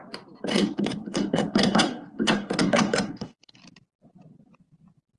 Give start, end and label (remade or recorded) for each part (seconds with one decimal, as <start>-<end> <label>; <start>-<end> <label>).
0.0-0.5 recorded; 0.5-3.6 remade; 3.6-5.2 recorded